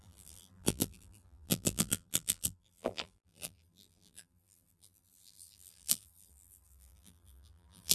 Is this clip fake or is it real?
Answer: fake